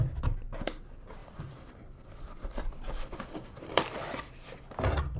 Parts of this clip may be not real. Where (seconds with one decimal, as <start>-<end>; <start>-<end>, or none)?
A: 1.2-4.3